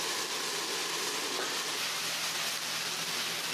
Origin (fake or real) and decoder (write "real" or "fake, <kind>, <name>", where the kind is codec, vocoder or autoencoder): real